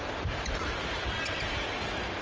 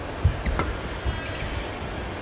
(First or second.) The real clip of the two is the second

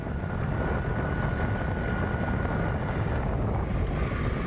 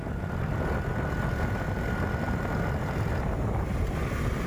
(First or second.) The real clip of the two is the first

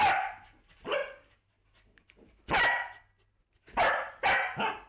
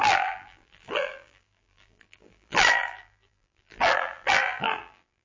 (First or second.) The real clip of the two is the first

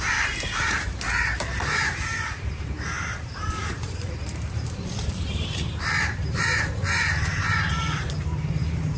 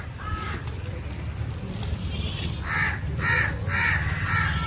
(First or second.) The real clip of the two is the second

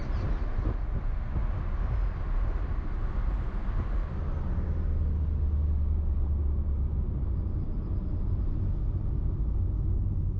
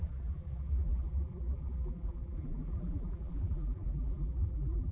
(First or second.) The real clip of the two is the first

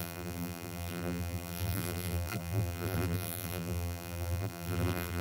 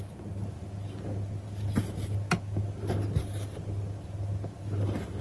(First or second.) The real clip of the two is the second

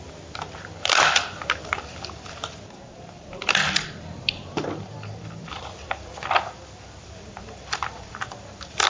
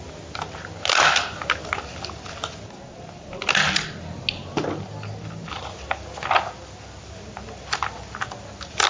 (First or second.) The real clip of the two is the second